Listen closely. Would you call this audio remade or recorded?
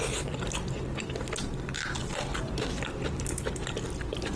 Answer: recorded